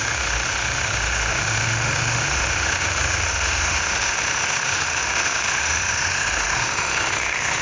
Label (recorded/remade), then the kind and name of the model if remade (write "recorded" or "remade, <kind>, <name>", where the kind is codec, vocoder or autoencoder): remade, autoencoder, DAC-VAE